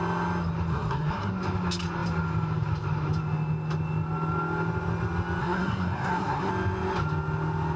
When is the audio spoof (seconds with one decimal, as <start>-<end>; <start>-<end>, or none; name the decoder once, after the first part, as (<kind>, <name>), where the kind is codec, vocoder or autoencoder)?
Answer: 0.7-1.3 (codec, SNAC); 5.4-6.5